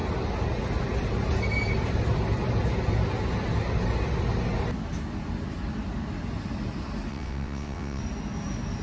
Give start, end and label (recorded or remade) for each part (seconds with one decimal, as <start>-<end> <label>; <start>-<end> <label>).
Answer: 0.0-7.1 recorded; 7.1-8.0 remade; 8.0-8.8 recorded